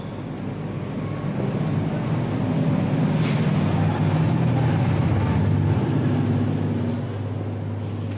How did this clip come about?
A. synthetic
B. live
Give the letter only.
B